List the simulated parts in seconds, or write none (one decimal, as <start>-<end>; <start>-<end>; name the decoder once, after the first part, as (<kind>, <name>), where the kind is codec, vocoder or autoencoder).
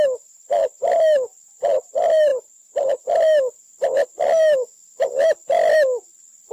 2.3-3.0 (vocoder, BigVGAN v2)